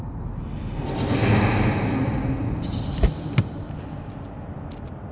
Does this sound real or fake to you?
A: real